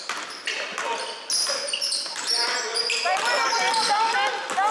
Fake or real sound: real